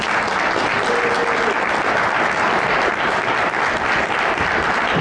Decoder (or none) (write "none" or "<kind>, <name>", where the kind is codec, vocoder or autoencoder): none